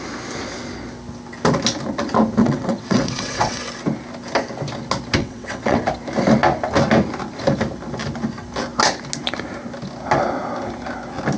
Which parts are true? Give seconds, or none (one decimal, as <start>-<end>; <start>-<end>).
0.0-2.4; 3.6-5.2; 5.8-11.4